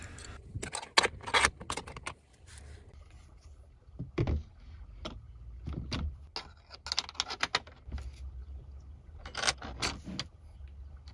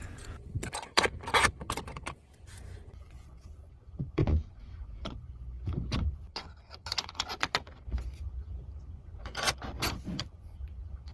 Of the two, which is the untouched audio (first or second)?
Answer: first